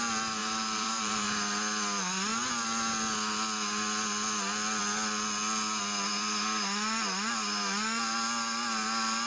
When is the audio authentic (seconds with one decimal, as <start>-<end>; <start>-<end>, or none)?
0.0-0.4; 1.3-9.3